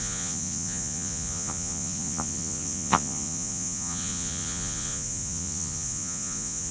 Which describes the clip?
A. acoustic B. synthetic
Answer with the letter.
B